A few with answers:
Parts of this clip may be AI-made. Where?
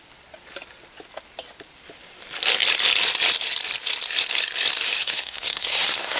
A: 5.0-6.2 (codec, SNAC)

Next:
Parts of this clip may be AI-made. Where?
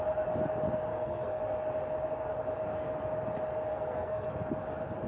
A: 0.9-1.4 (codec, SNAC); 3.7-4.3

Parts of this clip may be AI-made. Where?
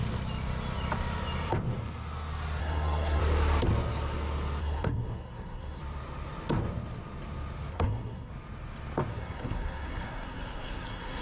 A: 2.6-3.2 (codec, SNAC); 4.6-5.8; 7.7-8.3; 9.1-11.2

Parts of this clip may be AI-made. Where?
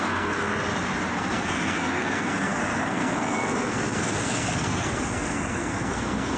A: 0.0-0.5 (codec, SNAC); 1.1-6.4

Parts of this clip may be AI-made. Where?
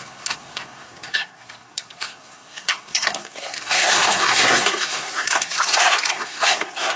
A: 0.0-7.0 (codec, SNAC)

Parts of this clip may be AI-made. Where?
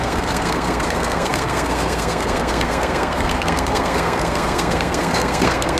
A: 0.0-5.8 (codec, SNAC)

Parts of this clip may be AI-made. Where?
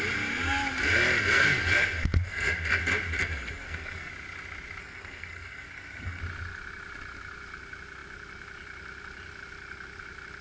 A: 1.2-2.8 (codec, SNAC); 3.2-4.1; 4.8-6.2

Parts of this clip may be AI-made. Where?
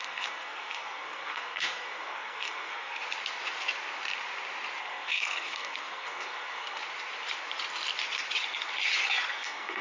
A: 0.0-3.0 (codec, SNAC); 4.8-6.8; 9.3-9.8